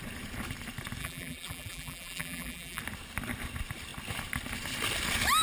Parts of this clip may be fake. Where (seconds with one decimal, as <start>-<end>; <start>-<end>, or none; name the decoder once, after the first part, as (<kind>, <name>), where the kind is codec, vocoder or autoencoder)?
1.0-2.8 (vocoder, BigVGAN v2)